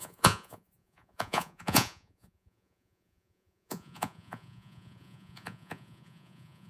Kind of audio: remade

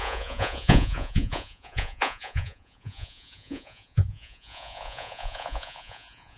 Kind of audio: remade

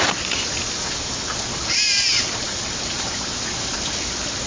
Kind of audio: recorded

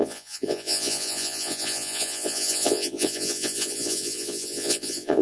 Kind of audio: remade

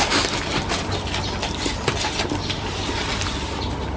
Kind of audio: recorded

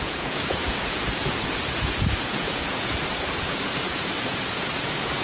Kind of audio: remade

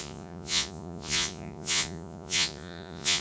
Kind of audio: remade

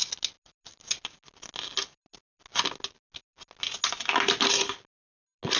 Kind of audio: recorded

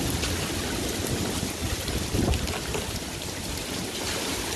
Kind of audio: recorded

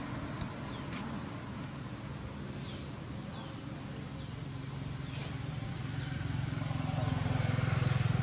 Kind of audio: recorded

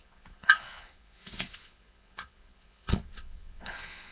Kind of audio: remade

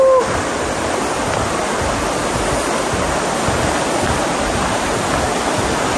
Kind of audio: recorded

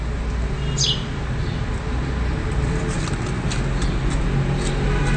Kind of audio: recorded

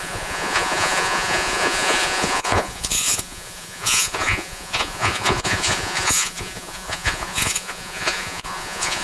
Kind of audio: remade